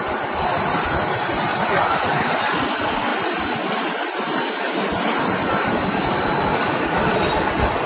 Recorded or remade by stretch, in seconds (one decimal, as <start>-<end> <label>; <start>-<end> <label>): 0.0-1.5 recorded; 1.5-2.6 remade; 2.6-6.5 recorded; 6.5-7.0 remade; 7.0-7.9 recorded